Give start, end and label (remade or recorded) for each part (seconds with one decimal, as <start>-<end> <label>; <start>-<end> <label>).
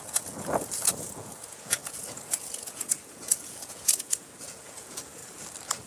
0.0-5.2 remade; 5.2-5.9 recorded